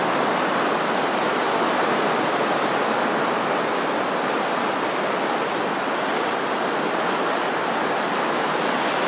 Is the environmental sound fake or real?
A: real